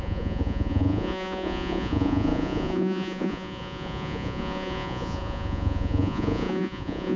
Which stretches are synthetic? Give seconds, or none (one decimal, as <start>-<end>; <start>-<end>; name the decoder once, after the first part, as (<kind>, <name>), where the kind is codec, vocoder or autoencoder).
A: 0.0-7.2 (vocoder, Vocos)